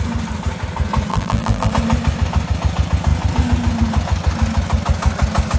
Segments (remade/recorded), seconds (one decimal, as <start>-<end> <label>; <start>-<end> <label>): 0.0-1.1 recorded; 1.1-1.7 remade; 1.7-5.6 recorded